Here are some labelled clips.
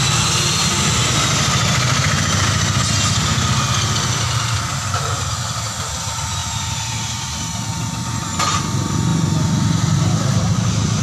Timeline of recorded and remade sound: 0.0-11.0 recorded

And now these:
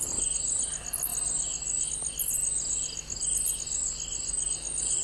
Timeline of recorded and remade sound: 0.0-5.0 recorded

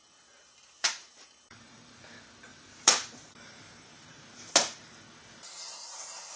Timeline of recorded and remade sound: 0.0-0.4 recorded; 0.4-1.9 remade; 1.9-2.5 recorded; 2.5-4.5 remade; 4.5-5.4 recorded; 5.4-6.0 remade; 6.0-6.4 recorded

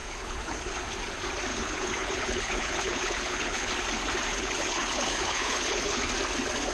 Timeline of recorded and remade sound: 0.0-0.8 remade; 0.8-1.5 recorded; 1.5-3.7 remade; 3.7-4.3 recorded; 4.3-6.1 remade; 6.1-6.7 recorded

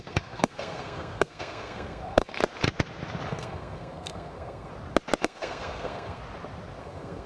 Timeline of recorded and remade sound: 0.0-2.4 remade; 2.4-3.3 recorded; 3.3-4.7 remade; 4.7-5.2 recorded; 5.2-6.2 remade; 6.2-6.8 recorded; 6.8-7.3 remade

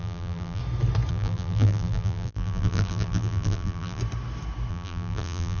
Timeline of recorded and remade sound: 0.0-0.6 remade; 0.6-1.1 recorded; 1.1-4.0 remade; 4.0-4.7 recorded; 4.7-5.6 remade

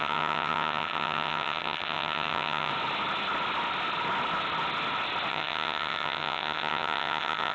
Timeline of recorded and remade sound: 0.0-2.7 remade; 2.7-5.3 recorded; 5.3-7.5 remade

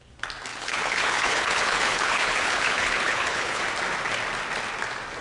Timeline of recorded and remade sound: 0.0-0.5 recorded; 0.5-3.6 remade; 3.6-5.2 recorded